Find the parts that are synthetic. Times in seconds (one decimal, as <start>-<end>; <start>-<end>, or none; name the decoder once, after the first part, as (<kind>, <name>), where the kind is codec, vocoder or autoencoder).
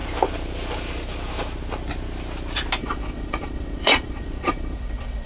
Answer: 2.8-5.3 (vocoder, Vocos)